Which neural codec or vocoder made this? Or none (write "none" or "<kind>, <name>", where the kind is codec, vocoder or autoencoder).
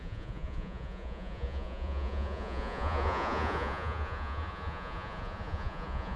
vocoder, Vocos